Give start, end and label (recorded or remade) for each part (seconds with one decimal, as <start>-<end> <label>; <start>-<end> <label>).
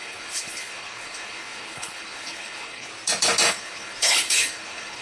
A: 0.0-2.9 remade; 2.9-3.5 recorded; 3.5-5.0 remade